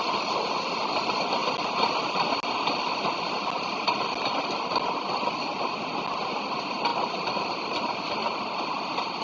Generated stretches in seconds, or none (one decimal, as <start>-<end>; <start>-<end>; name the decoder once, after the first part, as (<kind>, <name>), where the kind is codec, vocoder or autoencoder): 6.9-8.1 (vocoder, BigVGAN v2)

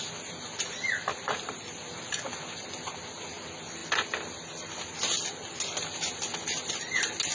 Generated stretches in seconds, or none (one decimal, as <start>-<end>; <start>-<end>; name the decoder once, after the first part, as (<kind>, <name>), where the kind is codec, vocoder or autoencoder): none